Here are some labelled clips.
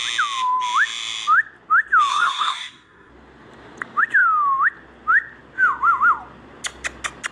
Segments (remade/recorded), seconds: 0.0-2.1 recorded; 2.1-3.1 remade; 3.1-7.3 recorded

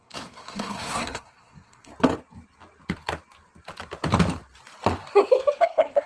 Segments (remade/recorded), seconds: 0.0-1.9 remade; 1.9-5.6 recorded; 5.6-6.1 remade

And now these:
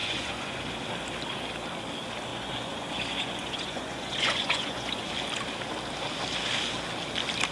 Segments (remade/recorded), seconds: 0.0-0.6 remade; 0.6-2.3 recorded; 2.3-5.1 remade; 5.1-7.5 recorded

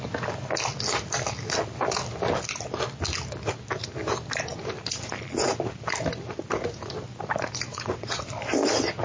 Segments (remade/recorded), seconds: 0.0-7.7 recorded; 7.7-8.2 remade; 8.2-9.0 recorded